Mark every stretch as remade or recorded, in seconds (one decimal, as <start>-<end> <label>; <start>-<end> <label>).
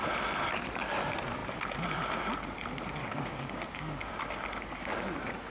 0.0-3.0 recorded; 3.0-4.1 remade; 4.1-5.5 recorded